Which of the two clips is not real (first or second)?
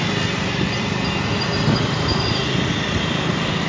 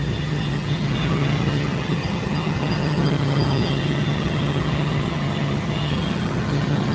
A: second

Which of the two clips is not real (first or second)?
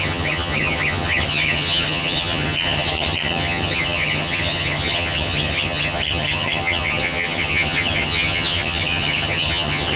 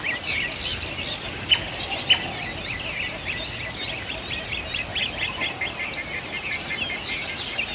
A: first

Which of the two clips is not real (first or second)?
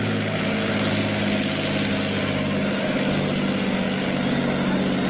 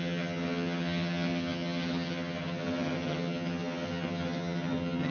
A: second